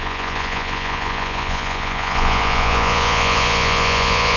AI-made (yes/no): yes